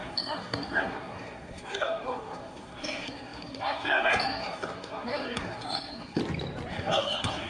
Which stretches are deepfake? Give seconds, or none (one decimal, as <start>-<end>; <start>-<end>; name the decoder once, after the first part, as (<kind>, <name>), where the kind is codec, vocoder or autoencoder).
0.0-6.2 (codec, SNAC); 6.7-7.5